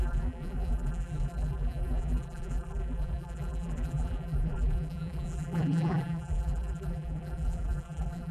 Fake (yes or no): yes